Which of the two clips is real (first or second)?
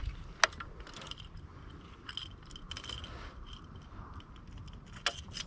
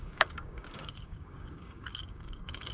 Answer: first